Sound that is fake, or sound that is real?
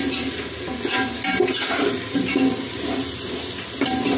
real